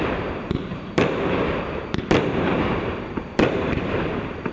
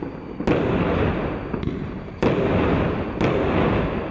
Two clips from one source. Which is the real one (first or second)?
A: second